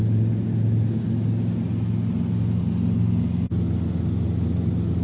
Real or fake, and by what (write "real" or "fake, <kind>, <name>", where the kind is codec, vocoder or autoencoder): real